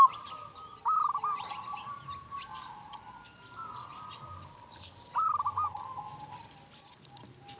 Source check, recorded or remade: recorded